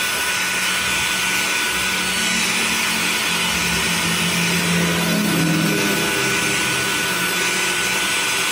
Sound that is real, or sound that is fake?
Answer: real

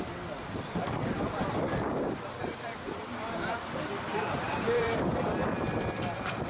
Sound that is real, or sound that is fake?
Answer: fake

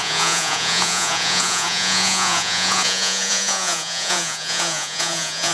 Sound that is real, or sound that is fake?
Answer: fake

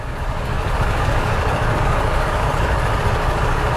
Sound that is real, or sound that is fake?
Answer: fake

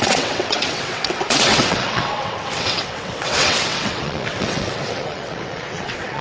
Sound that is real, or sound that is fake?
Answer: fake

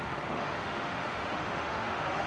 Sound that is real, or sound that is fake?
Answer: fake